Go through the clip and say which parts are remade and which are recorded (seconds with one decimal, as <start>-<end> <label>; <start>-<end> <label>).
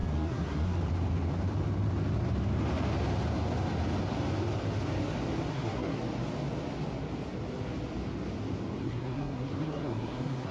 0.0-0.8 remade; 0.8-5.5 recorded; 5.5-6.0 remade; 6.0-8.8 recorded; 8.8-10.5 remade